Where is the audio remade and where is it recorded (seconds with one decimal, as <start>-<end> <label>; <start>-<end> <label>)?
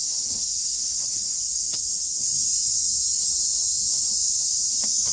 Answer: 0.0-5.1 remade